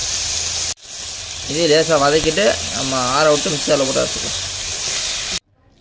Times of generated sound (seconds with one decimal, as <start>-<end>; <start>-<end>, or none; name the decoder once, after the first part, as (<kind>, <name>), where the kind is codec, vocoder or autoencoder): none